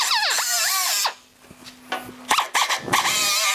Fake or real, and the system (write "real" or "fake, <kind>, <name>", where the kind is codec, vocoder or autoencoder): real